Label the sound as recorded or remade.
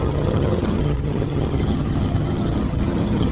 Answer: remade